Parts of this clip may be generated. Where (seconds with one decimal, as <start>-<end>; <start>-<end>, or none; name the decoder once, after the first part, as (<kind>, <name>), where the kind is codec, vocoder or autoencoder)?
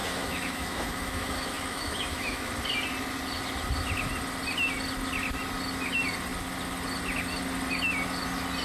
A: 0.0-2.5 (autoencoder, DAC-VAE)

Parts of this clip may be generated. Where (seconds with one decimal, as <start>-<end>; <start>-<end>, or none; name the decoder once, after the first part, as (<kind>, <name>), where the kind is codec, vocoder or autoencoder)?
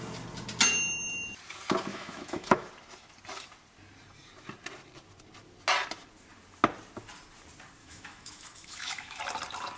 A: 1.9-2.7 (autoencoder, DAC-VAE); 7.8-9.2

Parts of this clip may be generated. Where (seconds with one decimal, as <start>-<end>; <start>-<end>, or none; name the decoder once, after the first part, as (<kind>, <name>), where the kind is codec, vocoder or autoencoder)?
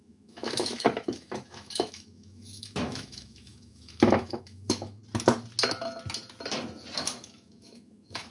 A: 0.0-5.0 (autoencoder, DAC-VAE); 7.0-8.3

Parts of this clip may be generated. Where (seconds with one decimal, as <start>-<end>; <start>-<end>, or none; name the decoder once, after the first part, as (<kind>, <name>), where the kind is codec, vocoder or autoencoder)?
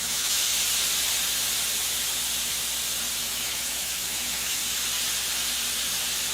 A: 0.0-0.5 (autoencoder, DAC-VAE); 3.2-4.6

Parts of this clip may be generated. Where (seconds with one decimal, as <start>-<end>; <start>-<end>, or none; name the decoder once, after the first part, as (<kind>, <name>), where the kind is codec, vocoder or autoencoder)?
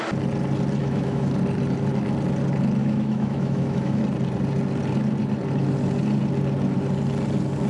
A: 0.8-1.3 (autoencoder, DAC-VAE); 2.8-4.0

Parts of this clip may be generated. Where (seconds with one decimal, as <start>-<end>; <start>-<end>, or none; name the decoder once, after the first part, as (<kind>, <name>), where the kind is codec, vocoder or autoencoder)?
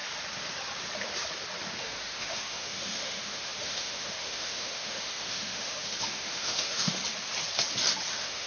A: 1.8-7.0 (autoencoder, DAC-VAE); 8.1-8.5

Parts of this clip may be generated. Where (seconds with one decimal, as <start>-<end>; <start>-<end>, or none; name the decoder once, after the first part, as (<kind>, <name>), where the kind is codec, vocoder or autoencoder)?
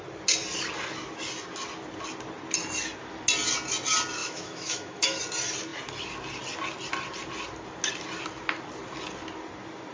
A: 4.2-5.2 (autoencoder, DAC-VAE)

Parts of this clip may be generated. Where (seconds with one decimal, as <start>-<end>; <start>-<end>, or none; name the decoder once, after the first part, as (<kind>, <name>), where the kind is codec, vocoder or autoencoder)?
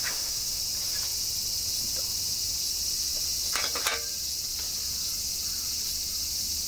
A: 0.0-0.6 (autoencoder, DAC-VAE)